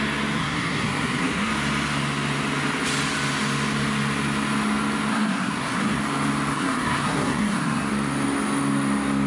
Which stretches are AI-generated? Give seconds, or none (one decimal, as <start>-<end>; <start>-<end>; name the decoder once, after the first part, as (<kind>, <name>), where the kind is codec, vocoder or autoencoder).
0.4-1.5 (codec, SNAC); 5.1-6.0; 6.5-7.9